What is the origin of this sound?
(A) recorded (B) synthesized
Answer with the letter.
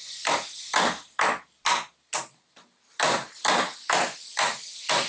A